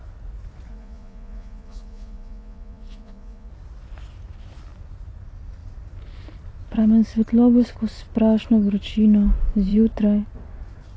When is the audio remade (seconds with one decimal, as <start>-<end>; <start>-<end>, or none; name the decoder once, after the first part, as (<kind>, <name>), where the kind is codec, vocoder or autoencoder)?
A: 0.7-3.5 (vocoder, Vocos)